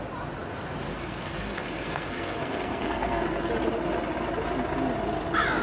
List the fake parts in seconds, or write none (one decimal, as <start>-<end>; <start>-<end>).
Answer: 0.9-3.5